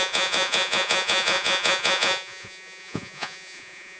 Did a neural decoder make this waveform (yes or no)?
yes